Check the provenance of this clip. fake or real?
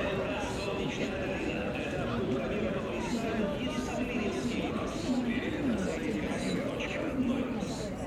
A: real